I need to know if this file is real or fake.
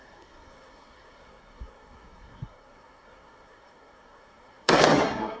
fake